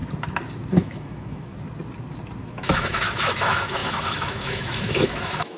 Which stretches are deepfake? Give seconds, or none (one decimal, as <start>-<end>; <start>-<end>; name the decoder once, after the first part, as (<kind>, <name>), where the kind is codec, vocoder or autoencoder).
0.8-1.5 (autoencoder, DAC-VAE); 2.4-5.6